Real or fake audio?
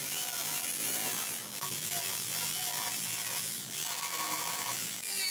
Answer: fake